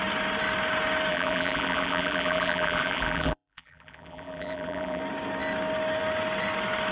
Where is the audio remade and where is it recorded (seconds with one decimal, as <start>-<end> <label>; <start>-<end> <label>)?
0.0-1.1 recorded; 1.1-5.0 remade; 5.0-6.9 recorded